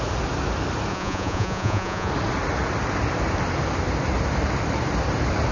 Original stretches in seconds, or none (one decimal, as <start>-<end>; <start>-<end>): 0.0-0.9; 2.1-5.5